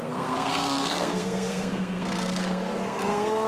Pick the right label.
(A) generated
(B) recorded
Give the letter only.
A